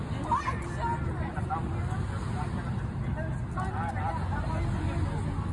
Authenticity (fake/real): real